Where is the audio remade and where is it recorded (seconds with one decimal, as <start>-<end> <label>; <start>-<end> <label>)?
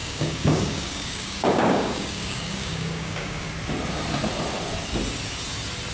0.0-3.5 remade; 3.5-5.9 recorded